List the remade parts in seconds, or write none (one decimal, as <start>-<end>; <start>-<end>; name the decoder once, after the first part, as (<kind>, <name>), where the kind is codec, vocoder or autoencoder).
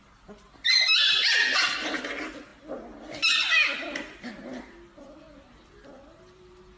none